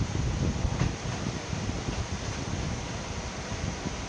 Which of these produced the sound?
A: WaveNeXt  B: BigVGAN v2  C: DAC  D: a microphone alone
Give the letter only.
D